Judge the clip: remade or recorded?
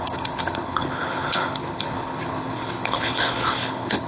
remade